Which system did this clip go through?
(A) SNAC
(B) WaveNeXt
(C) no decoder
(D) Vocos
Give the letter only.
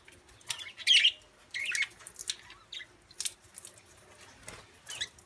C